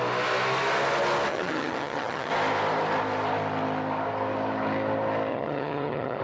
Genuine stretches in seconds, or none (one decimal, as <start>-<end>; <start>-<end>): 0.0-1.3; 2.3-5.3